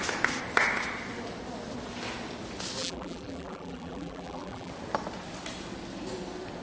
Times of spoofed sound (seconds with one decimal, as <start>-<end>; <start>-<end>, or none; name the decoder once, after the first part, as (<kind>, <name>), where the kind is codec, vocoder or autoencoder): 2.8-4.7 (vocoder, BigVGAN v2)